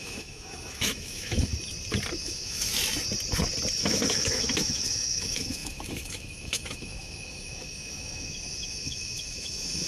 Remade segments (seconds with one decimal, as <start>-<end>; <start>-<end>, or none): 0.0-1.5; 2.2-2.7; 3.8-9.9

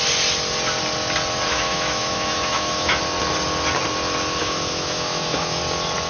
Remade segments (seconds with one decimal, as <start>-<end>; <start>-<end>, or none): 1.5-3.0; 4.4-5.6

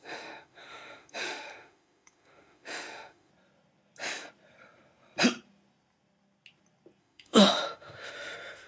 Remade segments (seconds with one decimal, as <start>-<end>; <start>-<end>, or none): 0.0-3.3; 7.0-8.7